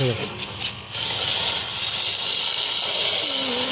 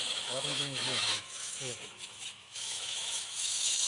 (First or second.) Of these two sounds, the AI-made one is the second